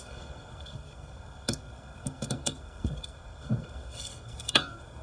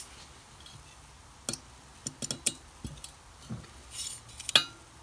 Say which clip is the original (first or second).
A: second